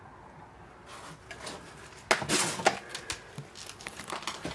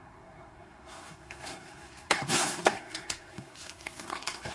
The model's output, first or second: second